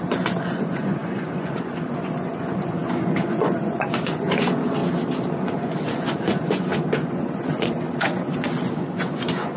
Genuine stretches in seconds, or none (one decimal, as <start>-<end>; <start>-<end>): 4.8-5.3